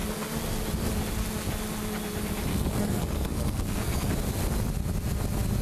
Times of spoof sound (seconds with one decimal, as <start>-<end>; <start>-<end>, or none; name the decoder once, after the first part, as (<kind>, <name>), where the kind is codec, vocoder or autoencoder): 2.5-4.1 (codec, SNAC)